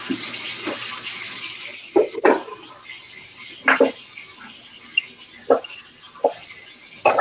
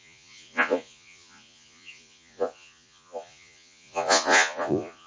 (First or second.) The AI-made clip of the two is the second